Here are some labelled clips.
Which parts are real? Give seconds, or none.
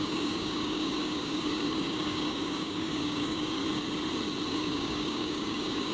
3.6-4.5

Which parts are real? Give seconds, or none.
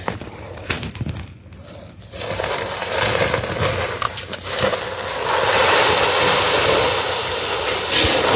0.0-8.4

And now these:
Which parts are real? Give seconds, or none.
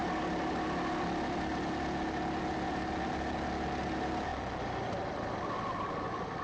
0.0-6.4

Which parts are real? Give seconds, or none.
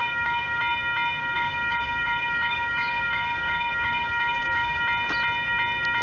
0.6-1.2; 4.8-6.0